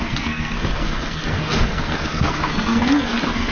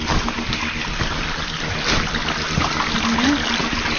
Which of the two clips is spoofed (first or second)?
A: first